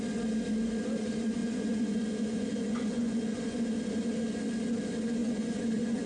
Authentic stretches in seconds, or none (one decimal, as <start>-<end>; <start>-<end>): 0.0-1.4; 3.6-5.2

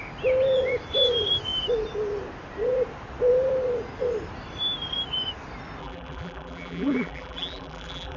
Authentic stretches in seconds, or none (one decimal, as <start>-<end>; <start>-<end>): 0.0-5.8

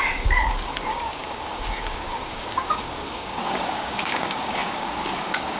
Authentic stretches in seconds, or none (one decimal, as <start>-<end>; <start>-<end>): none

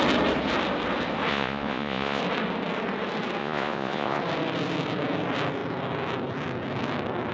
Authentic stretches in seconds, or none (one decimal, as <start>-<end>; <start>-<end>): 0.0-1.3; 2.2-3.4; 4.2-7.3